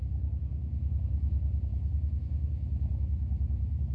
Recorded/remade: remade